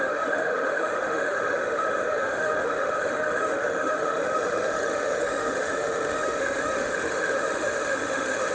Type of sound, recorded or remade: remade